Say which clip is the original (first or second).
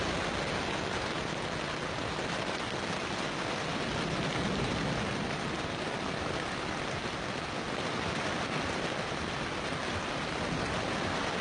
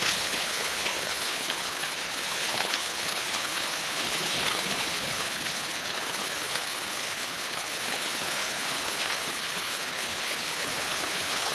first